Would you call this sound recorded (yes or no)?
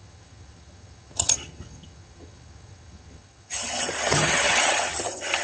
no